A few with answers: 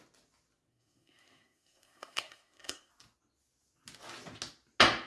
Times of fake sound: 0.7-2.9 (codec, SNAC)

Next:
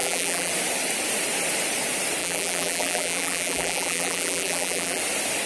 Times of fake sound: 0.0-0.5 (vocoder, BigVGAN v2); 2.2-5.0

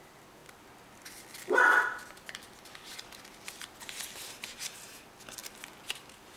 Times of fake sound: none

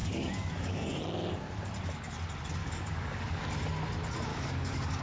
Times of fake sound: 0.0-1.0 (codec, DAC); 2.6-3.4; 4.3-5.0

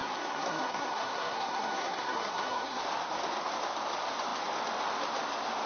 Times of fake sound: 0.0-2.8 (codec, SNAC)

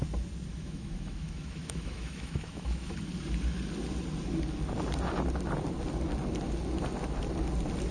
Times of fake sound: 0.5-3.0 (autoencoder, DAC-VAE)